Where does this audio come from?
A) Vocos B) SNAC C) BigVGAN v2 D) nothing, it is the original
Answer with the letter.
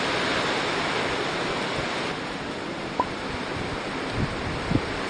D